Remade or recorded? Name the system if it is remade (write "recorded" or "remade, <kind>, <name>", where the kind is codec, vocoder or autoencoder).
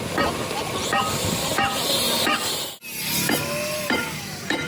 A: recorded